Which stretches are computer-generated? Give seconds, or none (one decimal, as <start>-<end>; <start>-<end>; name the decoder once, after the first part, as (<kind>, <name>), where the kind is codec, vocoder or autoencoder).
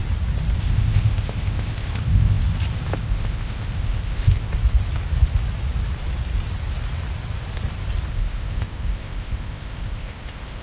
0.6-2.4 (codec, ZipCodec); 3.0-4.5; 8.1-10.6